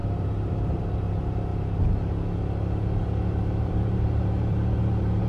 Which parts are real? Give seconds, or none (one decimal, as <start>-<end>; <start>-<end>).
1.5-3.6